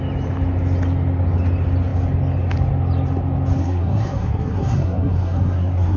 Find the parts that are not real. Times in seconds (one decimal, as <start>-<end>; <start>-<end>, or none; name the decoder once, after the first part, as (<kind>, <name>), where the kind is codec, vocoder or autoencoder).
3.6-6.0 (codec, SNAC)